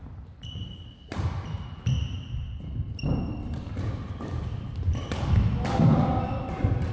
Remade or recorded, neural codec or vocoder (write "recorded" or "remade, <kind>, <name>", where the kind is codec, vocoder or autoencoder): recorded